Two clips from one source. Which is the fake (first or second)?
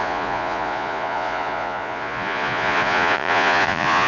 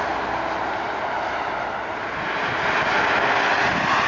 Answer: first